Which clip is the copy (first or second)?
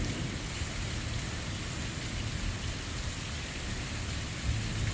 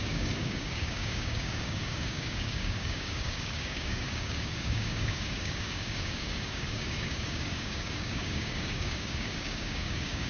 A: second